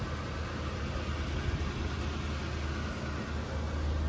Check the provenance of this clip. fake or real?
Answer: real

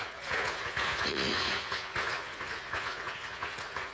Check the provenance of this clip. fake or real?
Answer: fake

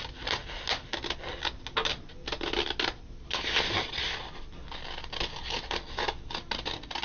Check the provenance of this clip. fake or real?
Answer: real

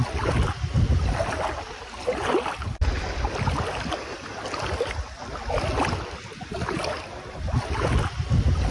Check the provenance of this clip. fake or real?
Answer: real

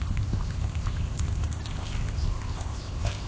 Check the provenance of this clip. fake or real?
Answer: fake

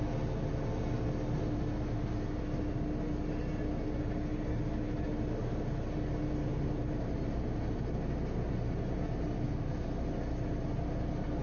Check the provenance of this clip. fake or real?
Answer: real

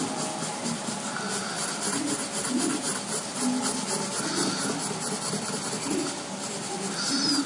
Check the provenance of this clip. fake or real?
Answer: real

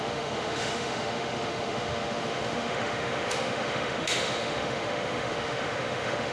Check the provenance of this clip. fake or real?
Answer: fake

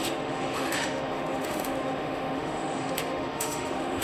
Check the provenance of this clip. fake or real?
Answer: fake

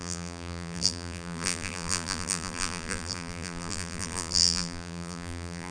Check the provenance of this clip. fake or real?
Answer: fake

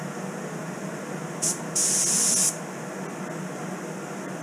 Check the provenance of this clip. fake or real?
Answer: real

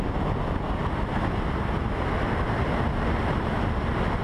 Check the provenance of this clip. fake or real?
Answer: real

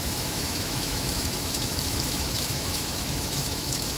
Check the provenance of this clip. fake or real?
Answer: fake